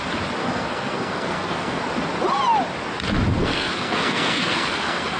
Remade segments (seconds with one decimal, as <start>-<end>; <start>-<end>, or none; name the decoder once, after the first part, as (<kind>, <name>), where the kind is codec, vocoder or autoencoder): 0.4-1.8 (codec, SNAC); 3.4-5.2